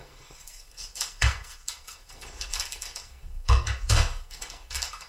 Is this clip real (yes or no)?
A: no